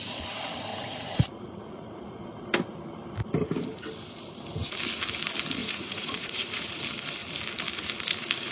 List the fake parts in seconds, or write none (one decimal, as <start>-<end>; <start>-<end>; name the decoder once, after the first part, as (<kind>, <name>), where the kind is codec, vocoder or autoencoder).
0.7-2.2 (vocoder, Vocos); 5.6-6.8